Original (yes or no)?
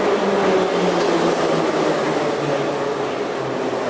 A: yes